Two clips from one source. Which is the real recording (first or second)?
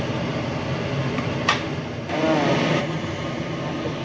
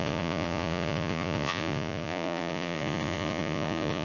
first